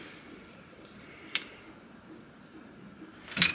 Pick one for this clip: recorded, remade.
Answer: recorded